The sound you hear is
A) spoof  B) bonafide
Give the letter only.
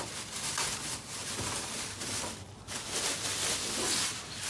B